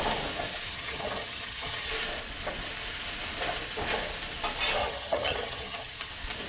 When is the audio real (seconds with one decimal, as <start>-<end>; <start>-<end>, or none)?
0.0-0.7; 1.9-4.8; 6.1-6.5